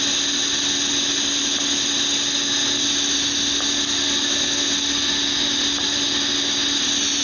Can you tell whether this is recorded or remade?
recorded